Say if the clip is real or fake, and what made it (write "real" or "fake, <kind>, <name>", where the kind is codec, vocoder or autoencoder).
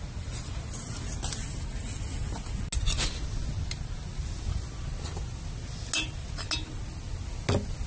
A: real